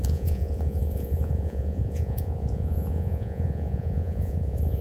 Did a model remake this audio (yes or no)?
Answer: yes